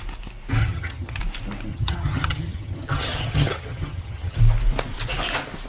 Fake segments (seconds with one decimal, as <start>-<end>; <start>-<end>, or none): 0.6-1.2; 1.7-4.4